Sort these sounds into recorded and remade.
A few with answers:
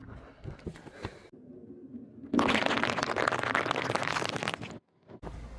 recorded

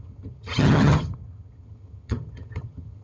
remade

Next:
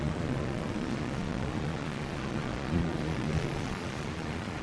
remade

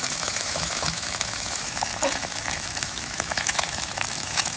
remade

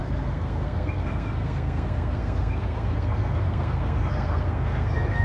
remade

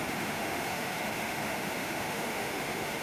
remade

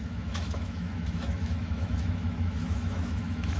remade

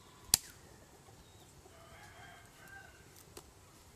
recorded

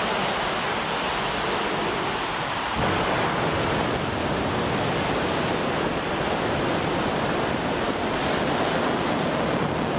recorded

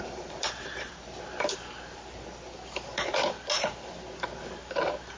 recorded